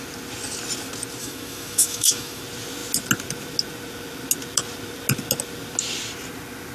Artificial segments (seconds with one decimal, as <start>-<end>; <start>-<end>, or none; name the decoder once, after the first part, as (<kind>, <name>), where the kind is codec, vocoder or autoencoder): 1.2-2.4 (autoencoder, DAC-VAE)